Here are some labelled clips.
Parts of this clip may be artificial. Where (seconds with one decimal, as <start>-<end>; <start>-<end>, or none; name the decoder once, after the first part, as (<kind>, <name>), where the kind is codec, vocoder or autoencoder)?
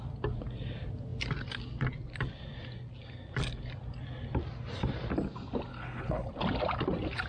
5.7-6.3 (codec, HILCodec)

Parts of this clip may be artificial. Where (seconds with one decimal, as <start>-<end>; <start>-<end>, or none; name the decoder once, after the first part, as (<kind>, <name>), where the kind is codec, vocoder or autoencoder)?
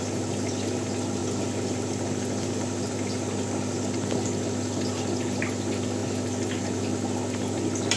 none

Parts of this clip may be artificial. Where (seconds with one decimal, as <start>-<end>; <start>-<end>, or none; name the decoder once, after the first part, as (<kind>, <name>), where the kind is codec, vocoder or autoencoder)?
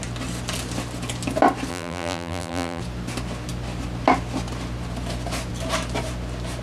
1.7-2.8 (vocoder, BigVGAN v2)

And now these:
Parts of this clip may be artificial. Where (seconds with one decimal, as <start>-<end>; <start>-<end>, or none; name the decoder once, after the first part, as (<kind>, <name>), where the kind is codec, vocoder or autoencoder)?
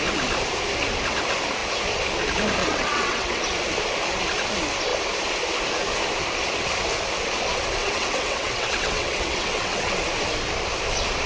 2.6-3.4 (vocoder, WaveNeXt); 7.8-9.9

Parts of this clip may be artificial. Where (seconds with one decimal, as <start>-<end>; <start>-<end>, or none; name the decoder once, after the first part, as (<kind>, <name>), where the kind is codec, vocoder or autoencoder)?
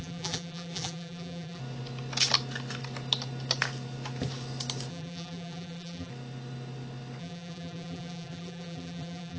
0.0-1.6 (vocoder, BigVGAN v2); 4.9-6.1; 7.2-9.4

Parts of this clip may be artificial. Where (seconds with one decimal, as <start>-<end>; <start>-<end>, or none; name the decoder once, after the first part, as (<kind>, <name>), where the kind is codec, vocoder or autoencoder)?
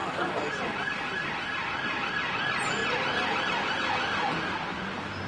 none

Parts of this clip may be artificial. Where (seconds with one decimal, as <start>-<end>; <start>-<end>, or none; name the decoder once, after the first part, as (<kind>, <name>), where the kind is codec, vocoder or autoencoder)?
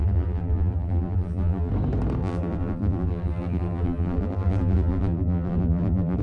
0.0-1.7 (vocoder, BigVGAN v2); 2.2-6.2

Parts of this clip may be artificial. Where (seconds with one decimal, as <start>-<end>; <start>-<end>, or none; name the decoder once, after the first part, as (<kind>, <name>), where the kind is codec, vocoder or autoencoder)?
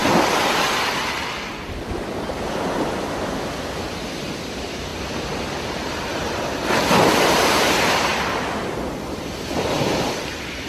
3.5-4.9 (vocoder, BigVGAN v2); 7.1-8.1; 9.1-10.7